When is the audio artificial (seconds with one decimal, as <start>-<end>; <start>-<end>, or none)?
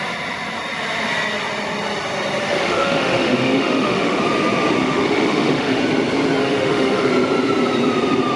2.4-4.2; 4.8-5.8; 6.4-7.1